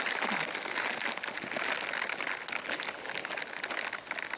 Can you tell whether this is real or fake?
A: real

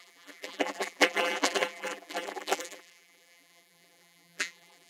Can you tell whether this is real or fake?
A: fake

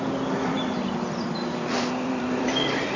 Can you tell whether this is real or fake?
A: fake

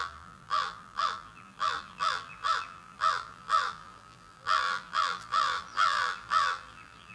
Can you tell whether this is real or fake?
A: fake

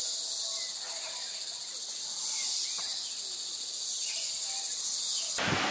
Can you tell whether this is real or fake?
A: real